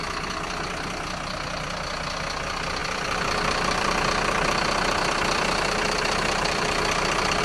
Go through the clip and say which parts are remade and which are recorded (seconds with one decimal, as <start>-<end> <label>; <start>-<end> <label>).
0.0-2.8 recorded; 2.8-7.4 remade